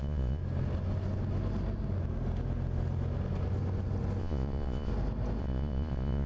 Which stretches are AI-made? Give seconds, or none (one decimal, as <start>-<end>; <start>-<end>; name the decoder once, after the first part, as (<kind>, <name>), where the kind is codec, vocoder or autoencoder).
0.0-0.4 (vocoder, Vocos); 4.2-4.9; 5.4-6.3